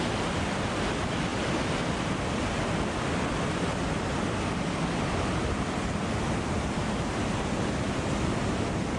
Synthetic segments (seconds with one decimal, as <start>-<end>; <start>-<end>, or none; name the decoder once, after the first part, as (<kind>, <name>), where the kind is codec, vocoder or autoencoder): none